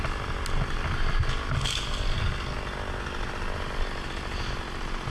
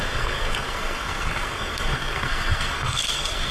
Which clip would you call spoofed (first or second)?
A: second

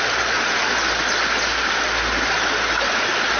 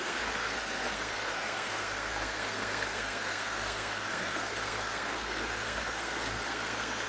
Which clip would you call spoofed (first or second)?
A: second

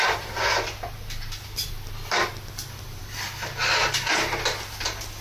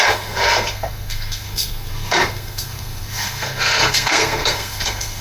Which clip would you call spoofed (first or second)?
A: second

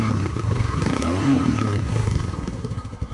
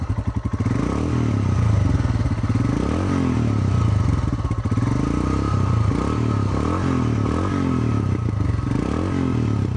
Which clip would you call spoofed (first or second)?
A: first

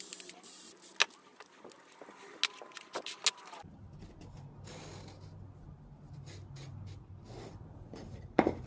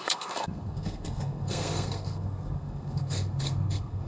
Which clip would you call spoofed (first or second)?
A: second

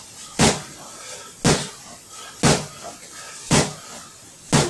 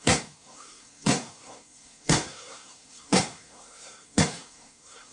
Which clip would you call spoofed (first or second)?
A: second